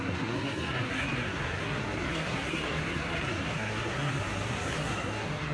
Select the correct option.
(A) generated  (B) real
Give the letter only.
A